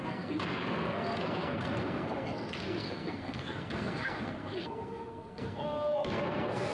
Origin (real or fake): fake